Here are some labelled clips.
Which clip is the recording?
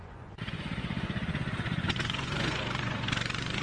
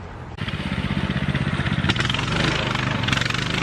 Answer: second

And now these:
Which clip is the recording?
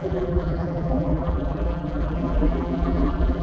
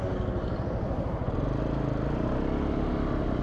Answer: second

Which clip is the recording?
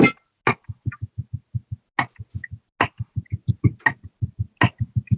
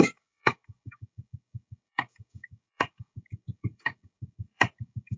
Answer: first